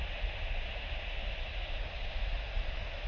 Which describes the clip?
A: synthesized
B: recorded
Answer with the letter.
B